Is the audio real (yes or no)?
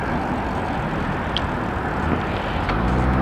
yes